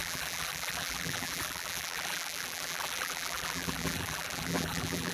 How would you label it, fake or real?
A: fake